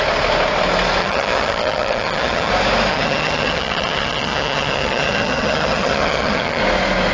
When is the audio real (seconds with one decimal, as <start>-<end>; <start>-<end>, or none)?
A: 0.0-1.0; 2.5-2.9; 6.6-7.1